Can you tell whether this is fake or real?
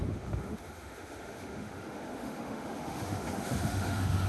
fake